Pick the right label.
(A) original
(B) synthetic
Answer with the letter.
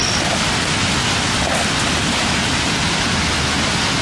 A